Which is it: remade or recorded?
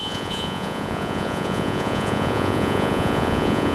remade